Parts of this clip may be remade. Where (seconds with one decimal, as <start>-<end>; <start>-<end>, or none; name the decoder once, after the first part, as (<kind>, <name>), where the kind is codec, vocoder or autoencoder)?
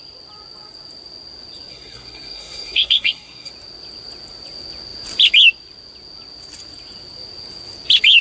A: 1.7-3.5 (codec, SNAC)